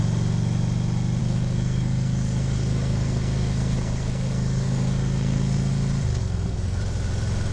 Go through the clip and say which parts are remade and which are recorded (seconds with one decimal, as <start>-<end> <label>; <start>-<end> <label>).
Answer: 0.0-1.2 recorded; 1.2-5.7 remade; 5.7-6.2 recorded; 6.2-6.8 remade; 6.8-7.5 recorded